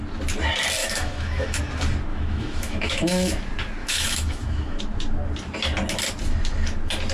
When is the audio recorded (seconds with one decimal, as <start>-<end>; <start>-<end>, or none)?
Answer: 0.0-0.8; 1.6-2.1; 3.3-3.8; 4.8-7.1